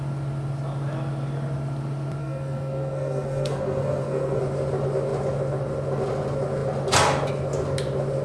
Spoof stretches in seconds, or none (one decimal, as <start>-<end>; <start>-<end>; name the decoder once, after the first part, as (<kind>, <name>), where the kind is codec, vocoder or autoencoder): 2.2-4.4 (codec, SNAC)